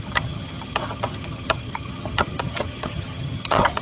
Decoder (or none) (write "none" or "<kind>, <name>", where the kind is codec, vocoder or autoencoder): vocoder, HiFi-GAN